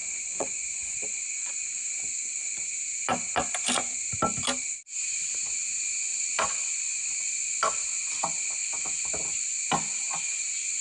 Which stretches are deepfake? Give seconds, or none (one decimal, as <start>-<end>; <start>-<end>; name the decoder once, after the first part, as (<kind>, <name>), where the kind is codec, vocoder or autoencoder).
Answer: 0.0-1.5 (vocoder, Vocos)